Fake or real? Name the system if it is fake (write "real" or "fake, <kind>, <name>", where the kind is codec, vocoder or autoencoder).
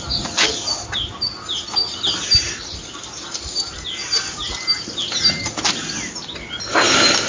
real